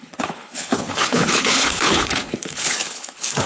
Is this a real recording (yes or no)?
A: no